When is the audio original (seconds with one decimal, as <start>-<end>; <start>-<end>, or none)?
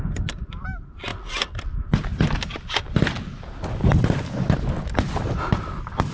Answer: 0.0-6.1